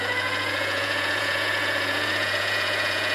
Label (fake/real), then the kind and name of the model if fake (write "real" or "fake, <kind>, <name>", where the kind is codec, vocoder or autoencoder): fake, vocoder, Vocos